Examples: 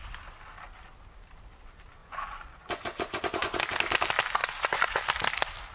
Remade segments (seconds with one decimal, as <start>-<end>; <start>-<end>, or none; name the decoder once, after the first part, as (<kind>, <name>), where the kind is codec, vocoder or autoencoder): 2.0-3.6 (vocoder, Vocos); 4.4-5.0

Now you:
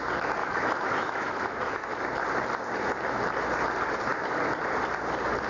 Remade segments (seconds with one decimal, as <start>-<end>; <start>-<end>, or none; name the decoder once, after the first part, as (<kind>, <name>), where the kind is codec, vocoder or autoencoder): 0.4-2.0 (autoencoder, DAC-VAE)

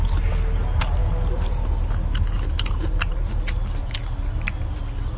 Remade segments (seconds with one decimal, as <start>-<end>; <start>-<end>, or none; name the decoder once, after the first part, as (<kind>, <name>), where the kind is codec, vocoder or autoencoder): none